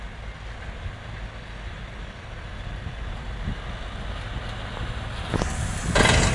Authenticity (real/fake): real